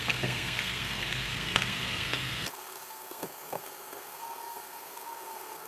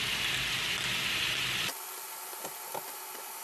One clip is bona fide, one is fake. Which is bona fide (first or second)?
second